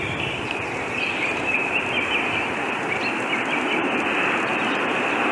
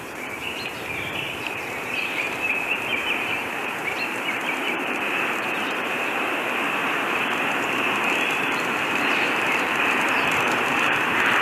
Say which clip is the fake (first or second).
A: second